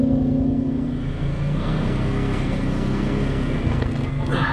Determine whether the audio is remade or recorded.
remade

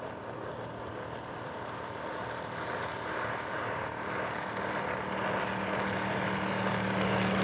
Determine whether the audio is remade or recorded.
recorded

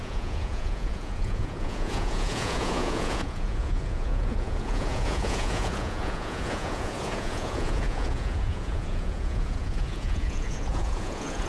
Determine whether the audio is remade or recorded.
remade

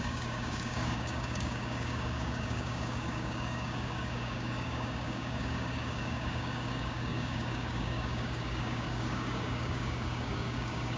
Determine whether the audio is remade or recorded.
remade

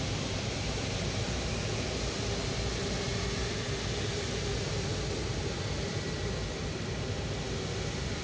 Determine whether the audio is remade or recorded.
recorded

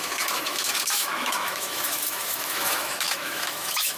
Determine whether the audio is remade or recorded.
remade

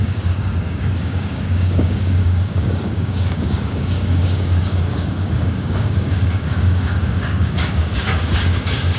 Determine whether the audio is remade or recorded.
remade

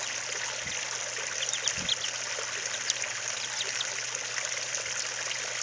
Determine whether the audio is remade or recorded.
recorded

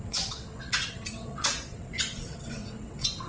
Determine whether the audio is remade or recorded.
remade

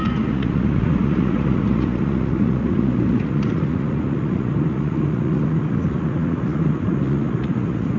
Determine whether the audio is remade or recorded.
remade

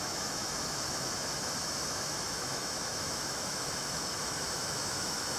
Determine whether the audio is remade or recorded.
remade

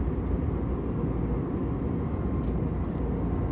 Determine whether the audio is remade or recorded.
recorded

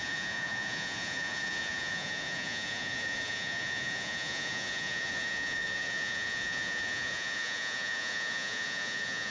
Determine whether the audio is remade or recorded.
remade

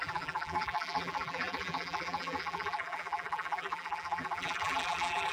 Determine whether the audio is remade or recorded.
remade